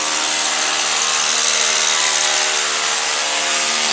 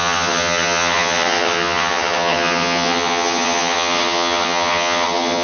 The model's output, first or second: second